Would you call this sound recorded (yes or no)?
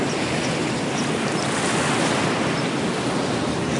yes